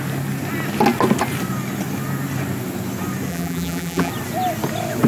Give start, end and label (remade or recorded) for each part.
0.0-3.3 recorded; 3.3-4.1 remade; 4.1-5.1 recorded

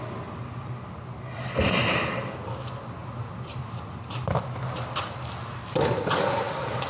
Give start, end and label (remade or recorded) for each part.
0.0-6.9 recorded

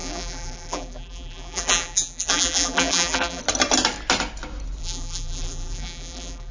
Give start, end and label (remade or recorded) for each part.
0.0-3.4 remade; 3.4-4.8 recorded; 4.8-6.5 remade

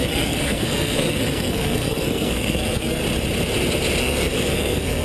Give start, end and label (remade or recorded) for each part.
0.0-3.0 remade; 3.0-4.0 recorded; 4.0-5.0 remade

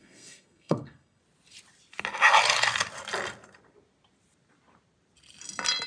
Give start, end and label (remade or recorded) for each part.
0.0-1.2 remade; 1.2-5.9 recorded